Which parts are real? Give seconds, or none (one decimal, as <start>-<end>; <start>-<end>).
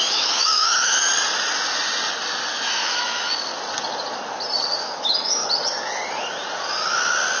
1.1-2.5; 3.5-4.8; 5.4-7.4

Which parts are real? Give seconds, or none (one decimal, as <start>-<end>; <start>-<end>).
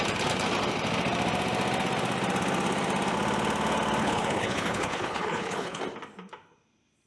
0.0-4.0; 5.8-7.1